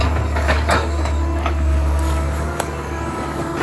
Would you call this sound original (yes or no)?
no